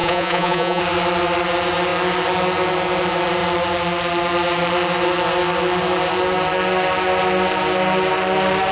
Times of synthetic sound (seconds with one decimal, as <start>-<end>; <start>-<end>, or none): 0.0-0.8